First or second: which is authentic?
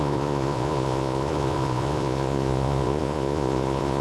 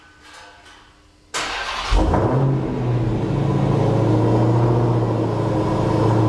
second